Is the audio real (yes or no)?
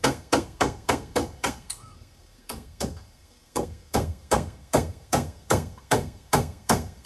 no